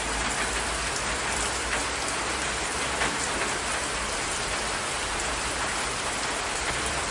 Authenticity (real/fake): real